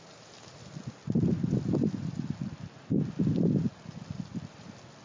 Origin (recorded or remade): recorded